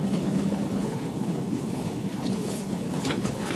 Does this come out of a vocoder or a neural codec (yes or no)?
yes